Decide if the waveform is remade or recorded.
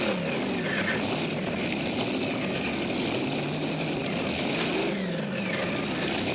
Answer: recorded